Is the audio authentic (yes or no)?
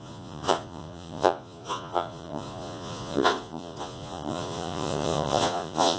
no